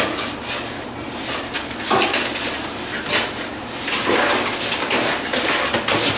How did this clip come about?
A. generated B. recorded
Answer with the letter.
B